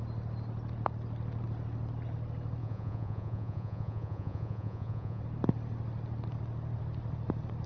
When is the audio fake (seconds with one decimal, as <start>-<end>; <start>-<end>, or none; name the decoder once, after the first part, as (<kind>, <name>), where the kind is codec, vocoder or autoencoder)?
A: 2.6-5.2 (vocoder, Vocos)